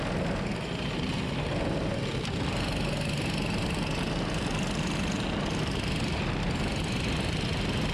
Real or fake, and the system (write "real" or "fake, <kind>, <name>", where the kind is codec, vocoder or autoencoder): real